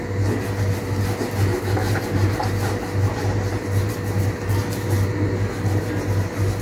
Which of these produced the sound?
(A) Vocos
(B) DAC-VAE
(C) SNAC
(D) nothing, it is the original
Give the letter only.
D